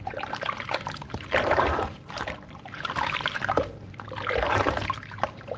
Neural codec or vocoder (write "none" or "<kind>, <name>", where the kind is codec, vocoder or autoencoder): vocoder, BigVGAN v2